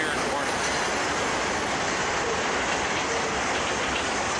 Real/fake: real